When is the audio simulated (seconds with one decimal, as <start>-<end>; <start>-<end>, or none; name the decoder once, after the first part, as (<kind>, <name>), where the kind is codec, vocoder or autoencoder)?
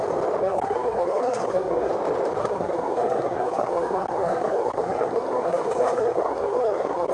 0.4-1.9 (codec, SNAC); 2.4-7.1